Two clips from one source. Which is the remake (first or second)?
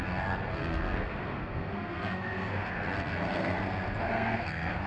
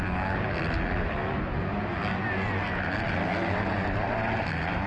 first